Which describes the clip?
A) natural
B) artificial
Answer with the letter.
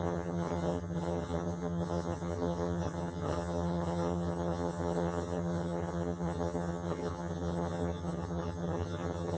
B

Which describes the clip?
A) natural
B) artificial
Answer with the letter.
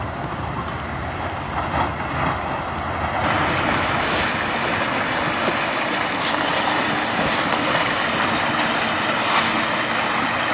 A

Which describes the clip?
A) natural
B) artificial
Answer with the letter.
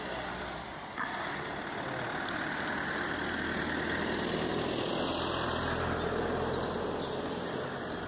A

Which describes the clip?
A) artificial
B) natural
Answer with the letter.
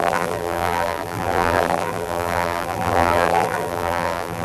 A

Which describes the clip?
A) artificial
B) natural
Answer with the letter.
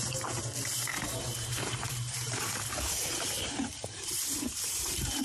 A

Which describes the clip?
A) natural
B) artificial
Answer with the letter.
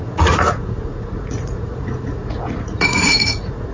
B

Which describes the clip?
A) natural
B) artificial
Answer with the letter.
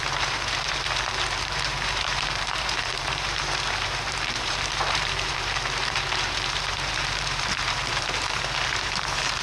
B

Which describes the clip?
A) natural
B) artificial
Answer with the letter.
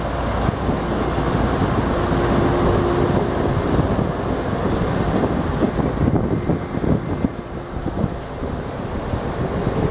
A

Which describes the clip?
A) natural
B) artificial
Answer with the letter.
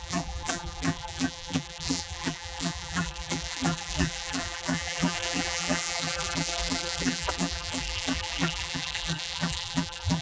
B